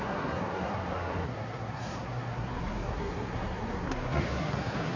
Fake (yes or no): yes